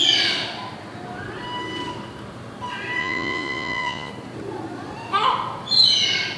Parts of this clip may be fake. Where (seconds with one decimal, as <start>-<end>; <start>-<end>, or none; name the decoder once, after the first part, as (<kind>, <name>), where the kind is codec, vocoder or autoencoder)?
3.0-4.1 (vocoder, Vocos)